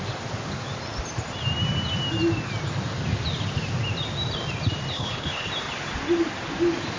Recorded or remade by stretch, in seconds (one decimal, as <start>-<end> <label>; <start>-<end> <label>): 0.0-4.9 recorded; 4.9-5.5 remade; 5.5-7.0 recorded